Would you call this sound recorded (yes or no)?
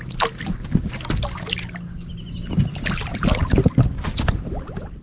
yes